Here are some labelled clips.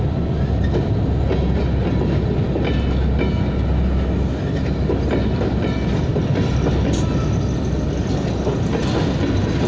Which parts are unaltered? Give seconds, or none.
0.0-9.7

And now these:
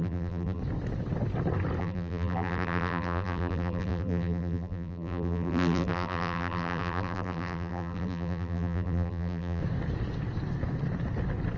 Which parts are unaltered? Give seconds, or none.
0.6-1.8; 9.6-11.6

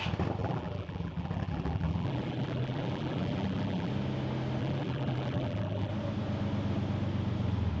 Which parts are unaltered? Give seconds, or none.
0.0-0.4; 3.9-4.6; 5.9-7.8

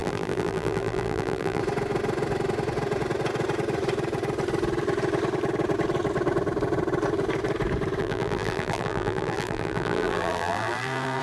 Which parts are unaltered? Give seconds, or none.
1.6-8.0

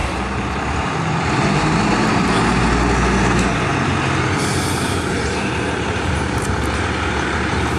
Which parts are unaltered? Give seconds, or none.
1.2-3.7